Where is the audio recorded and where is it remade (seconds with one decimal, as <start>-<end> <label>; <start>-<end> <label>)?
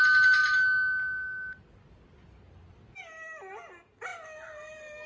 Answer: 0.0-5.1 recorded